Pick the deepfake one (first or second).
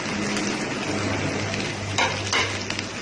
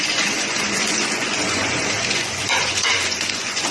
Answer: second